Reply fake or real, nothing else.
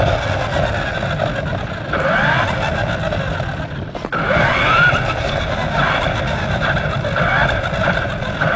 real